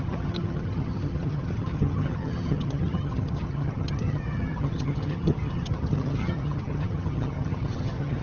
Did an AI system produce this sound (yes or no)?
yes